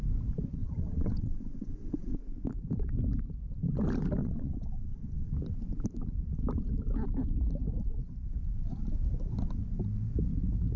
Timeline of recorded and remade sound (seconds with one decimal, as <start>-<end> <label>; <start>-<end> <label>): 0.0-0.6 recorded; 0.6-2.2 remade; 2.2-4.2 recorded; 4.2-5.3 remade; 5.3-10.8 recorded

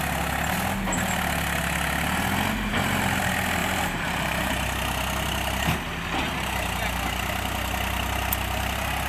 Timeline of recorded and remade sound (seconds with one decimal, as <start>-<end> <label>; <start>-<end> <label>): 0.0-2.7 recorded; 2.7-3.2 remade; 3.2-3.6 recorded; 3.6-4.5 remade; 4.5-9.1 recorded

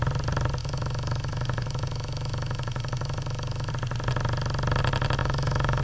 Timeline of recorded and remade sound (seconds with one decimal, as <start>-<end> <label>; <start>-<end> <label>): 0.0-0.6 recorded; 0.6-3.7 remade; 3.7-5.2 recorded; 5.2-5.8 remade

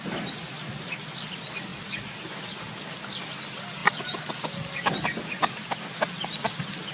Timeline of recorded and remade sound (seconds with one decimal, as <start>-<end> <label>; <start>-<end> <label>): 0.0-6.9 recorded